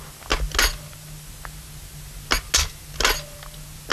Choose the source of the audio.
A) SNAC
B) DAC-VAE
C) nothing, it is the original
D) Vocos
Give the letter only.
C